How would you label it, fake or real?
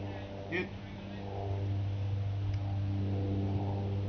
real